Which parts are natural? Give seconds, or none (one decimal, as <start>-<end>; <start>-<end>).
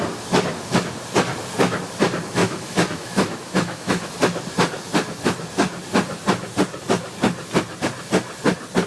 0.0-2.4; 4.1-8.9